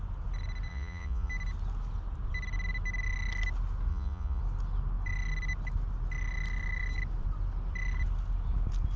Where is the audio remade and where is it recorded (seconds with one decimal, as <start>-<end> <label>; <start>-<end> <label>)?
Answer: 0.0-0.7 recorded; 0.7-1.3 remade; 1.3-3.9 recorded; 3.9-4.4 remade; 4.4-9.0 recorded